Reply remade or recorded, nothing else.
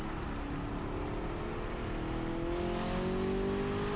recorded